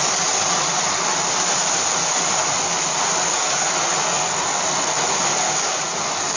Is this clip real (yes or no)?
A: yes